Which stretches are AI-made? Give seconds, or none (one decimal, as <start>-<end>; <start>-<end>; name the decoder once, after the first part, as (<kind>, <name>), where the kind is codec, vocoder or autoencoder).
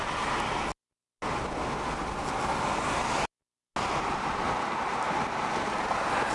none